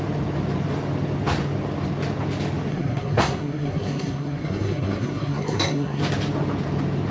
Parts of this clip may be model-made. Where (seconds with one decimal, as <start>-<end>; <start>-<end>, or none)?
2.7-6.0